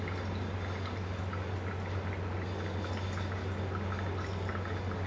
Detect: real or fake real